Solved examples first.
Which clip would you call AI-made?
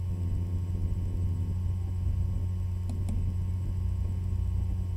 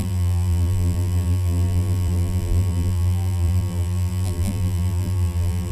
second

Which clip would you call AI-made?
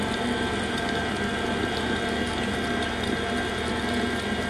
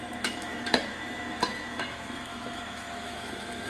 second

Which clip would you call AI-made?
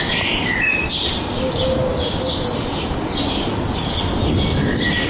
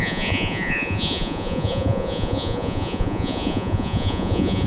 second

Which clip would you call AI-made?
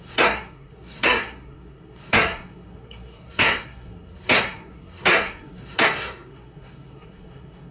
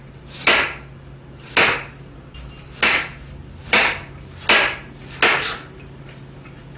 first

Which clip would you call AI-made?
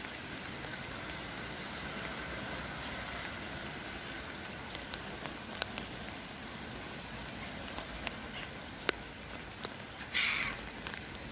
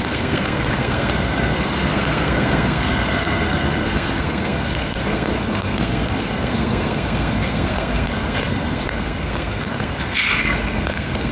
second